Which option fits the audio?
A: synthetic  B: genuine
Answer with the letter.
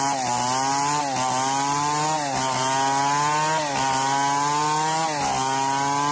B